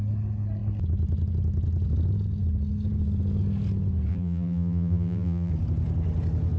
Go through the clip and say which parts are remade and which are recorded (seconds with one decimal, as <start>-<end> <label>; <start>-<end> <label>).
0.0-4.1 recorded; 4.1-5.5 remade; 5.5-6.6 recorded